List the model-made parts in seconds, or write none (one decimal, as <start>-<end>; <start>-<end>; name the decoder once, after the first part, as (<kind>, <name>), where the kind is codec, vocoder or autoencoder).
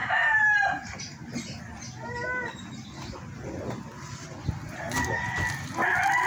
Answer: 0.0-1.6 (vocoder, BigVGAN v2)